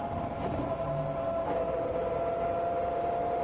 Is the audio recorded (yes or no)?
yes